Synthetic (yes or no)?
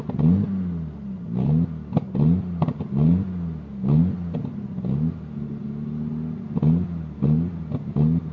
no